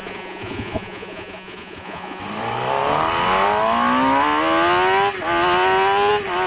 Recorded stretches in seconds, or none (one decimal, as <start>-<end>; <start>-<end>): 2.2-6.5